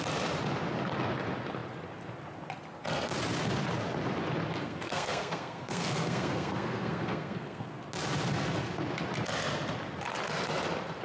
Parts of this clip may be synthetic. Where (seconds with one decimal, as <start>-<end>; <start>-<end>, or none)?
4.6-7.8